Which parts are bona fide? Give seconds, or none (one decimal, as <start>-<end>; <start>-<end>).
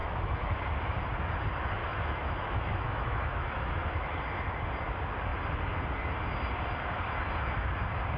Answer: 0.6-1.8; 4.2-8.2